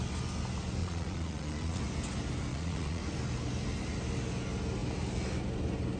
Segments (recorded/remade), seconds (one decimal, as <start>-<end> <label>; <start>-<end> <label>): 0.0-0.8 recorded; 0.8-1.8 remade; 1.8-2.5 recorded; 2.5-3.0 remade; 3.0-6.0 recorded